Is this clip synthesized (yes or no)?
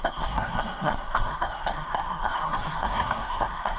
yes